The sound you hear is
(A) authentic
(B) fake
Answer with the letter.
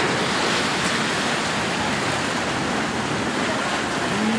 A